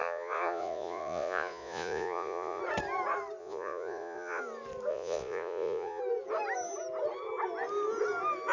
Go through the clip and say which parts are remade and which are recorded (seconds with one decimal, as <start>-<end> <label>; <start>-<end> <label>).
0.0-2.6 remade; 2.6-3.4 recorded; 3.4-4.4 remade; 4.4-4.9 recorded; 4.9-6.0 remade; 6.0-8.5 recorded